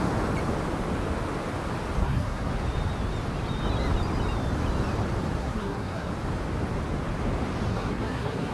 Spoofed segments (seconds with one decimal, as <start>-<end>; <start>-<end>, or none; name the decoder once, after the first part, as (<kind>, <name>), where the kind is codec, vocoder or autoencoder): 2.0-2.5 (codec, SNAC); 5.4-6.1; 7.7-8.5